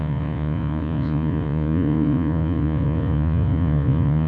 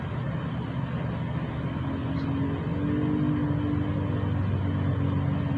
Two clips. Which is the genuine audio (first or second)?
second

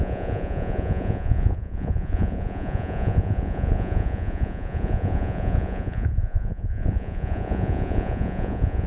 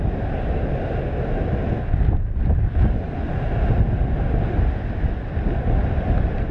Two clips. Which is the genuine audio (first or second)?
second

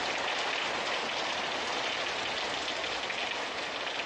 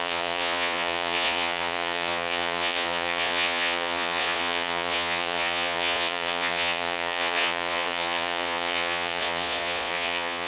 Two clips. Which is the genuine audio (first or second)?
first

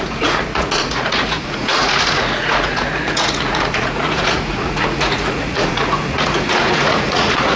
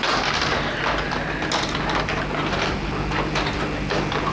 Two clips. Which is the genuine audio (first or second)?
second